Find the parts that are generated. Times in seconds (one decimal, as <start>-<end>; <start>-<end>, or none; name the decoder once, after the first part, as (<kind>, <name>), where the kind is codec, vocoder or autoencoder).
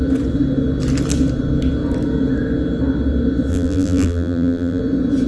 3.5-4.8 (vocoder, BigVGAN v2)